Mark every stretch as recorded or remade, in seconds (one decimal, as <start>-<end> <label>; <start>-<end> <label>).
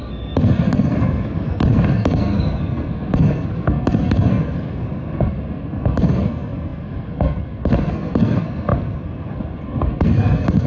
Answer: 0.0-10.7 remade